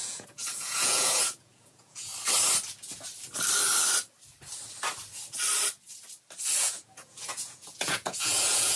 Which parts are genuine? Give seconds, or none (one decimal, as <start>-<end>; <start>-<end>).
2.1-6.6